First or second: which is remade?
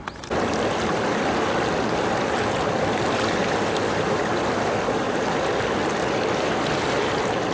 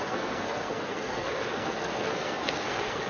second